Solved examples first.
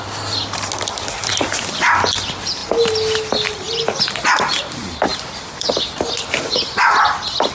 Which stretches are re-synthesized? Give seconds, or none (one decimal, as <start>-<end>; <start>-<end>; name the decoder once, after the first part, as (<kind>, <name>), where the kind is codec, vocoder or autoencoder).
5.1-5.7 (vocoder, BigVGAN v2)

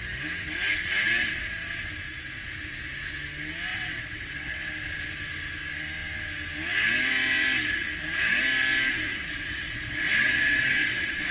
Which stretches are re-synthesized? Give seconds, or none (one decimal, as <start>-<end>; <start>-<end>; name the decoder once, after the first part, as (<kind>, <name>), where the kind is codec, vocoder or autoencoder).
3.7-4.7 (vocoder, WaveNeXt); 9.1-11.3

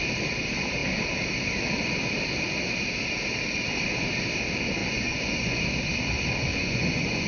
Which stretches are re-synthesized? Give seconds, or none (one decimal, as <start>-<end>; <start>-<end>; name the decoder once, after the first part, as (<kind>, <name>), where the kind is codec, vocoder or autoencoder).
4.8-5.6 (vocoder, Vocos); 6.5-7.3

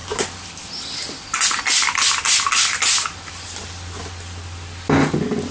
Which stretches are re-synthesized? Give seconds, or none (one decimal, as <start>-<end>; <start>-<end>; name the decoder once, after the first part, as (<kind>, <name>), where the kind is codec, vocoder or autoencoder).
none